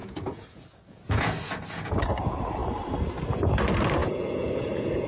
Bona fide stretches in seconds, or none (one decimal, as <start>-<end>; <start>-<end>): 1.9-4.0